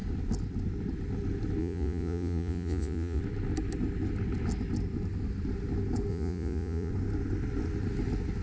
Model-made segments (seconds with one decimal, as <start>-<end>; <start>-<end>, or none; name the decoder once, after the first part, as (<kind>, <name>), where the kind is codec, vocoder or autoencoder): 1.6-3.2 (vocoder, Vocos); 6.1-6.9